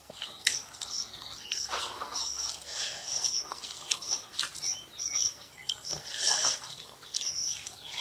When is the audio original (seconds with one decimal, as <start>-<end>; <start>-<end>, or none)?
4.4-5.0